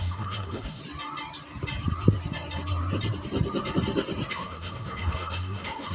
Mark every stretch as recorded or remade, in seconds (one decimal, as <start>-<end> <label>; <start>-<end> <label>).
0.0-0.8 remade; 0.8-4.3 recorded; 4.3-5.9 remade